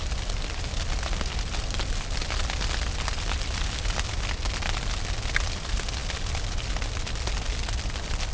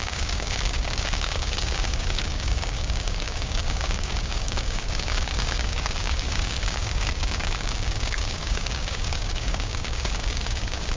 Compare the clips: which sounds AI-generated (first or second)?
second